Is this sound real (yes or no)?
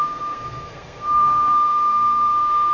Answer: no